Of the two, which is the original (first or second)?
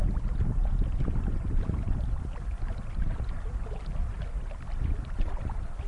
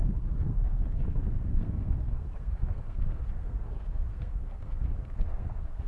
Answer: first